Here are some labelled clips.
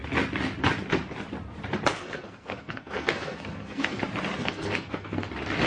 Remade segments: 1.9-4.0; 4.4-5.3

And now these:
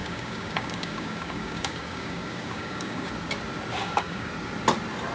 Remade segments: 0.0-3.1; 3.8-4.3

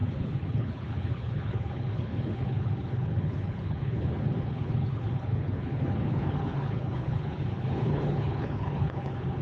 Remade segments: 0.0-9.4

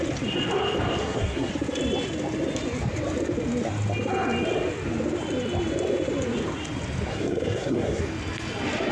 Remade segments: 1.0-1.5; 7.1-8.0

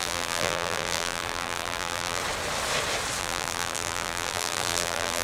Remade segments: 0.0-2.2; 3.2-5.2

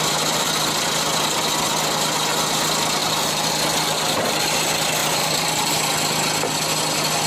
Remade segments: 3.0-3.5; 5.0-5.7

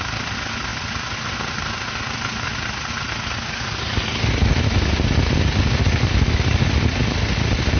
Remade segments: none